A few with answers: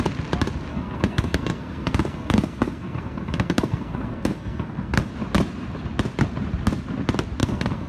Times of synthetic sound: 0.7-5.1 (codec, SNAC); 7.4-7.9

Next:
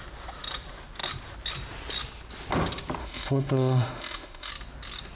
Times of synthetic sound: 3.0-4.5 (autoencoder, DAC-VAE)

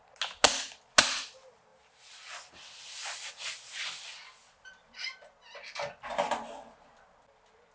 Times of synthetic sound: 4.4-6.0 (vocoder, BigVGAN v2)

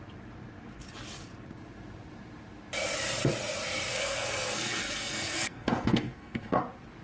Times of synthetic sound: 3.9-6.6 (codec, SNAC)

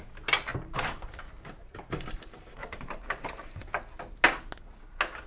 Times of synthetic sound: 0.5-3.7 (vocoder, BigVGAN v2)

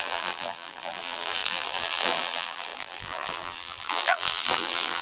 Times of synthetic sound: 0.0-5.0 (vocoder, BigVGAN v2)

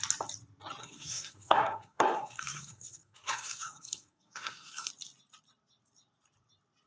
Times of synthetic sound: 0.8-4.9 (codec, SNAC)

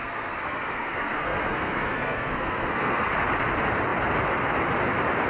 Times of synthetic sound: 0.0-3.1 (codec, SNAC)